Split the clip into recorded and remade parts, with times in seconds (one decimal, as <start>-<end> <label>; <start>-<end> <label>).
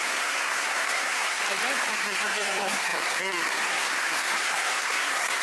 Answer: 0.0-1.4 remade; 1.4-1.9 recorded; 1.9-5.4 remade